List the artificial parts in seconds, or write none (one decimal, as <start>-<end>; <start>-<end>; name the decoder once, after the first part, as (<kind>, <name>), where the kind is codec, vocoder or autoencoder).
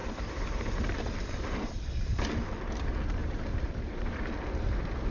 0.0-1.7 (vocoder, BigVGAN v2); 3.2-4.3